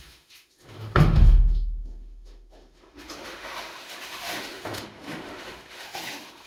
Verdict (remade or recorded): remade